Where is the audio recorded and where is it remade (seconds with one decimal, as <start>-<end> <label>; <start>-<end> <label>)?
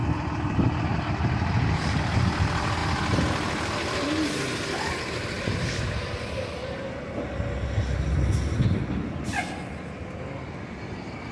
0.0-11.3 recorded